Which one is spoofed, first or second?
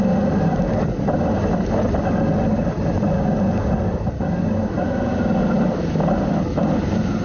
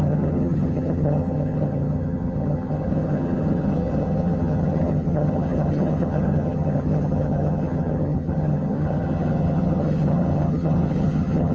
second